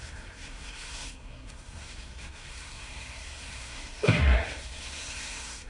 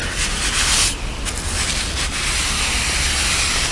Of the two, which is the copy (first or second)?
first